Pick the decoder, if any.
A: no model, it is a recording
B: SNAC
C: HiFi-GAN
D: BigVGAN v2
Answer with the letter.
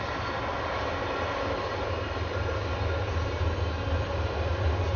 A